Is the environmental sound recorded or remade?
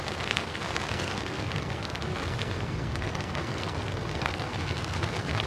remade